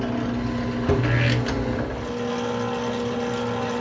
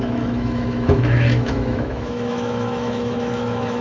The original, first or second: first